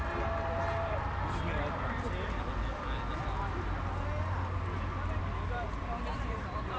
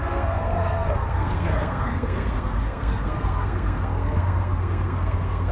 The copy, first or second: second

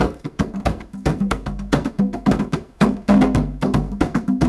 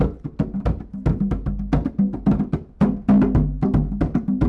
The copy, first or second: first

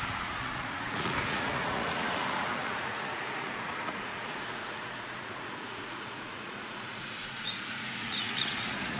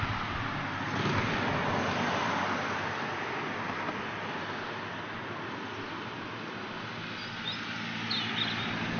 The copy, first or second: first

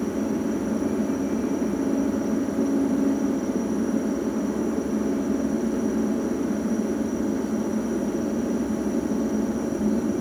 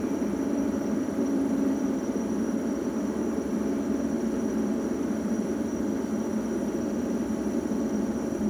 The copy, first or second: second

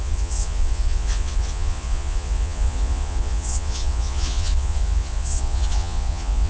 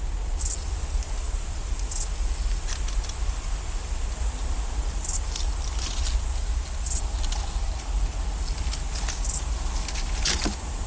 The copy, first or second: first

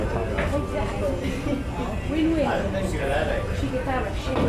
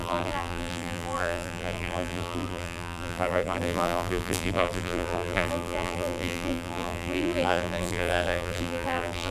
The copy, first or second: second